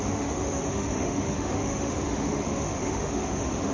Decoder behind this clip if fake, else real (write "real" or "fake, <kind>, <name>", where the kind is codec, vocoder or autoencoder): fake, autoencoder, DAC-VAE